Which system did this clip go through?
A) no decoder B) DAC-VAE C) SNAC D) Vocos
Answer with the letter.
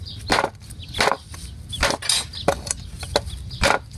A